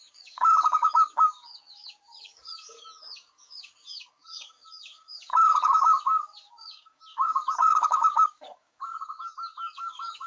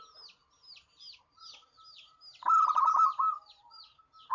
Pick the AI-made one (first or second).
first